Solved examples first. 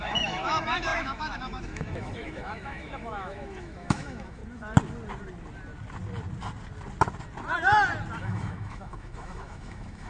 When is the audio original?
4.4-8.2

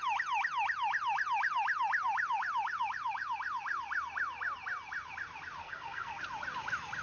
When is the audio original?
0.0-5.6; 6.2-7.0

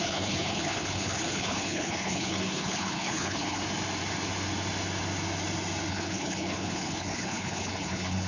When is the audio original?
3.6-5.9